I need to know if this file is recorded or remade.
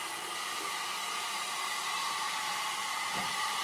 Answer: recorded